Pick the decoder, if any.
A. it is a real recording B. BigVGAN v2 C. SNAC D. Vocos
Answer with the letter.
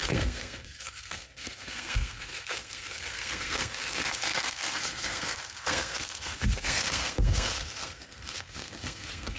C